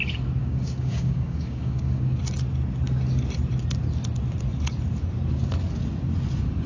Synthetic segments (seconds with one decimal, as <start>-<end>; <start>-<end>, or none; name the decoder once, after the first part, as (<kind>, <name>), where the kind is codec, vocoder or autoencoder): 0.4-2.2 (codec, DAC)